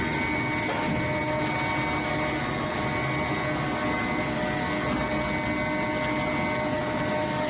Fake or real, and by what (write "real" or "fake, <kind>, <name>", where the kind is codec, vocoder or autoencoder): real